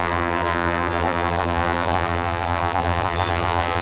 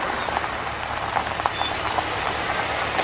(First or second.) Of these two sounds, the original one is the second